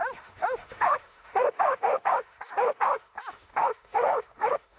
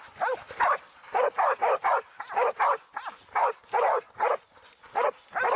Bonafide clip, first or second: second